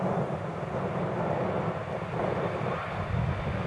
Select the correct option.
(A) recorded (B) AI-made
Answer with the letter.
A